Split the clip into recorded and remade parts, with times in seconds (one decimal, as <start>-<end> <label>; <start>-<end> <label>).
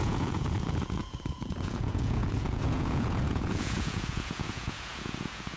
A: 0.0-5.6 remade